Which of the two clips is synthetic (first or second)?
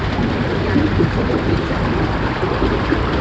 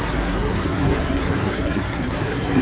second